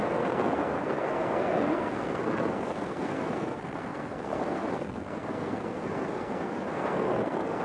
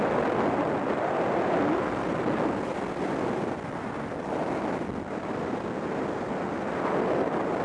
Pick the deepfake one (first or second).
first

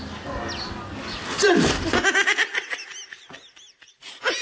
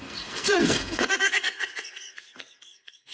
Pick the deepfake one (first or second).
second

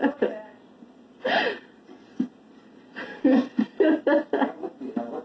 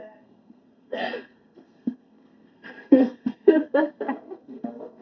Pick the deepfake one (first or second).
second